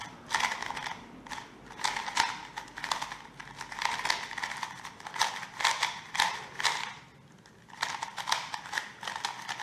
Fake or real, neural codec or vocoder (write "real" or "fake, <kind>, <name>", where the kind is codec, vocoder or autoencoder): real